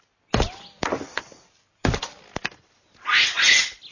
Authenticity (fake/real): real